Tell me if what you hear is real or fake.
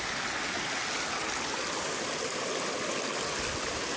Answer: real